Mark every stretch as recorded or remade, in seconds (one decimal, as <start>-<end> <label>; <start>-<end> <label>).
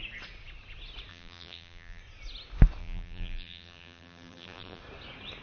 0.0-1.1 recorded; 1.1-2.0 remade; 2.0-2.8 recorded; 2.8-4.8 remade; 4.8-5.4 recorded